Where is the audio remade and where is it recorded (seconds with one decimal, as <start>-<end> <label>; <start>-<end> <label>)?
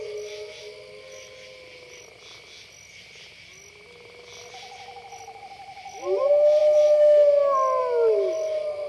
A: 0.0-8.9 recorded